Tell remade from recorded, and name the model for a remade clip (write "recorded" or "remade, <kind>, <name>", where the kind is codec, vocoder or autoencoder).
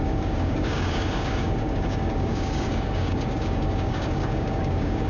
remade, codec, DAC